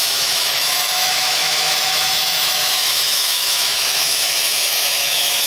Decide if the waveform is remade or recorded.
remade